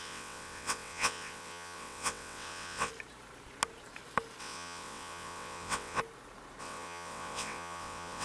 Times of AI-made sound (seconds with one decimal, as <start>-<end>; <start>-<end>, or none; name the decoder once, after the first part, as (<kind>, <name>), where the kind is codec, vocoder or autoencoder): 0.0-2.9 (vocoder, WaveNeXt); 4.4-6.0; 6.6-8.2